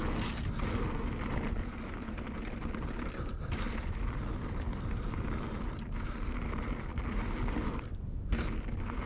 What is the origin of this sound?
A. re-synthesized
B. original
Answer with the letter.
B